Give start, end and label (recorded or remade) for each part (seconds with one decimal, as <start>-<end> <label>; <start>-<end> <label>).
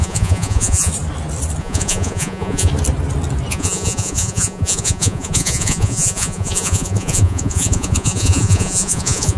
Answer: 0.0-0.9 remade; 0.9-1.6 recorded; 1.6-2.7 remade; 2.7-3.5 recorded; 3.5-9.4 remade